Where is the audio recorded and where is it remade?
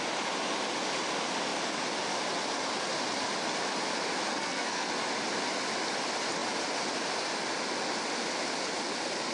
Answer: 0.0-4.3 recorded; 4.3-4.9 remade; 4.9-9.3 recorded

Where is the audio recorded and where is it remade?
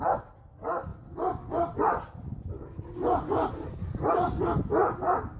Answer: 0.0-5.4 recorded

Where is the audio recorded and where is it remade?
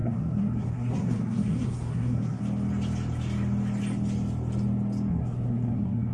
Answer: 0.0-2.4 remade; 2.4-5.1 recorded; 5.1-6.1 remade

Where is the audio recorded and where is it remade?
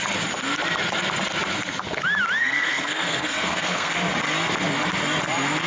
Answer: 0.0-2.4 recorded; 2.4-3.9 remade; 3.9-5.7 recorded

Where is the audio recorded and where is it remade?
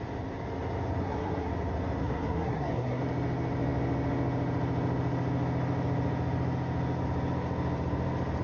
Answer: 0.0-1.0 recorded; 1.0-1.5 remade; 1.5-2.0 recorded; 2.0-3.0 remade; 3.0-8.4 recorded